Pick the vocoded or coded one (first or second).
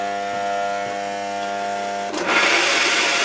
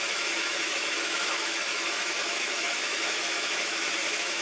second